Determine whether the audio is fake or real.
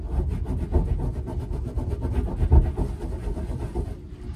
real